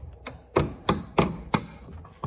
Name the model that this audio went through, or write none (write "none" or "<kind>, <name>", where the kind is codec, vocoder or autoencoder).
none